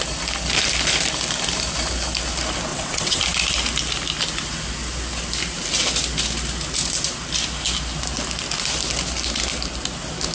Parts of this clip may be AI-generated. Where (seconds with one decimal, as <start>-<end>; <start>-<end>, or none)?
2.7-3.2